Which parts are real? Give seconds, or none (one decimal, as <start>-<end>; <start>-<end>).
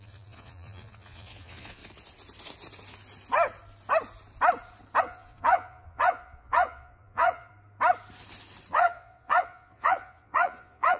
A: 1.8-5.0; 7.5-8.7